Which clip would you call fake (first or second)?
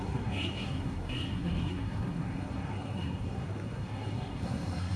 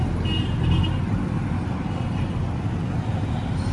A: first